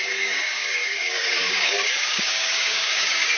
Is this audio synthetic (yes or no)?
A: yes